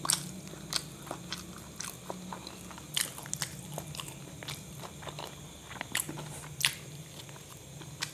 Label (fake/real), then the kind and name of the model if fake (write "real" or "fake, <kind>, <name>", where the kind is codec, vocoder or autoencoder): real